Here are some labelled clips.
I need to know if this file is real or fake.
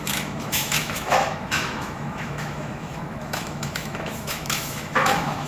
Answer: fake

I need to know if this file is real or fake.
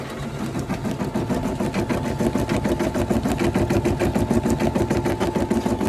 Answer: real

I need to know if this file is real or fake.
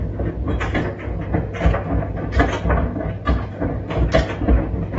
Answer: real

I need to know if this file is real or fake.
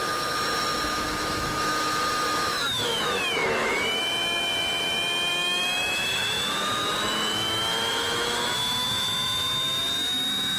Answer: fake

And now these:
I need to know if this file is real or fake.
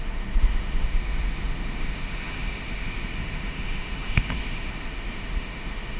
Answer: fake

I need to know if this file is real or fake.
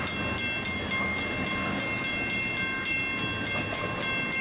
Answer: real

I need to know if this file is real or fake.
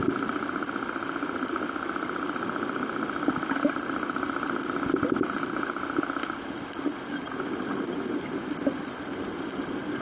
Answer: real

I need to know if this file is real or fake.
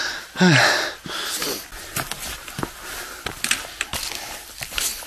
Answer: real